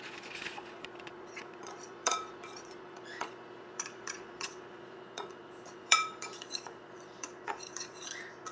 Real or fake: fake